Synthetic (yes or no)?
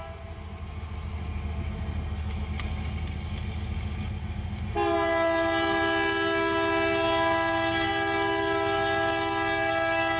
no